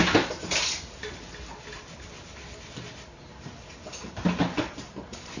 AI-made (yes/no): no